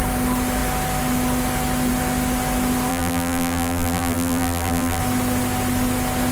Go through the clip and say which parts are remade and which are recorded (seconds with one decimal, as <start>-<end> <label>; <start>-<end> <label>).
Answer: 0.0-2.9 recorded; 2.9-5.0 remade; 5.0-6.3 recorded